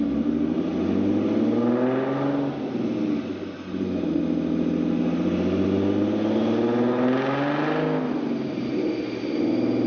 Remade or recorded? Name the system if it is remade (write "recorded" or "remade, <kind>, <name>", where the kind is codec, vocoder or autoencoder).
recorded